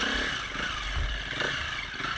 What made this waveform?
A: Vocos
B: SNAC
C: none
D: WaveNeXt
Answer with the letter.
C